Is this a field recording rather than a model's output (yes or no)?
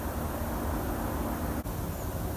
yes